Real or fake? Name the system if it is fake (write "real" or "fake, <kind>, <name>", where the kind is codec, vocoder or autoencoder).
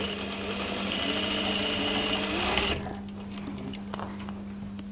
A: real